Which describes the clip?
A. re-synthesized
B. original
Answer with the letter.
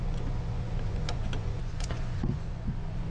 A